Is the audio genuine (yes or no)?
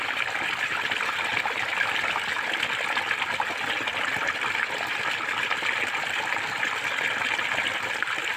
yes